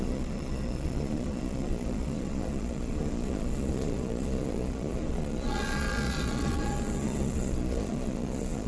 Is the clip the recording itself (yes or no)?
no